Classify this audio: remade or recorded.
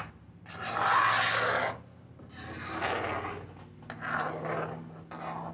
recorded